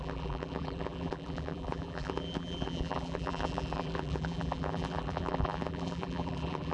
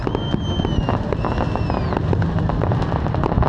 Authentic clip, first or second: second